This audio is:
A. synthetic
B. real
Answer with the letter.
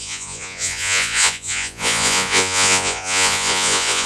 A